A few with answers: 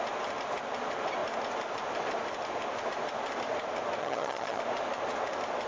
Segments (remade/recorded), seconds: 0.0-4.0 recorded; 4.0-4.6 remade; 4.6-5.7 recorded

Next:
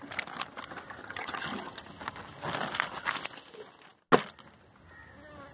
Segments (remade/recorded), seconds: 0.0-1.0 recorded; 1.0-1.8 remade; 1.8-5.5 recorded

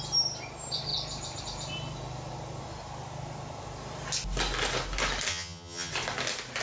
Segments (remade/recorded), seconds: 0.0-5.3 recorded; 5.3-5.9 remade; 5.9-6.6 recorded